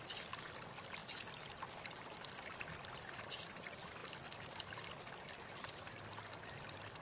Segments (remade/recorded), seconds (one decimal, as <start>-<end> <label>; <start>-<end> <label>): 0.0-7.0 recorded